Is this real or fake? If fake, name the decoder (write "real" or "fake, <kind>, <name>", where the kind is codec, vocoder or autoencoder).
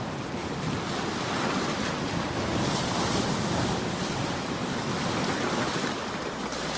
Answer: real